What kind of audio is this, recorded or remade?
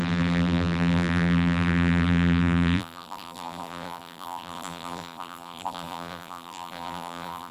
remade